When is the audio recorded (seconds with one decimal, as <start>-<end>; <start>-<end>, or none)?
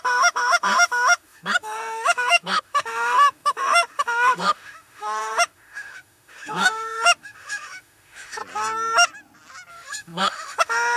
8.4-9.7